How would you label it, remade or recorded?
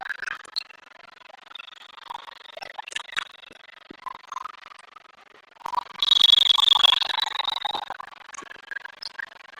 recorded